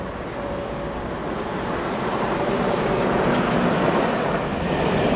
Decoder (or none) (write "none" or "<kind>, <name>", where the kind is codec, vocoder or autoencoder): none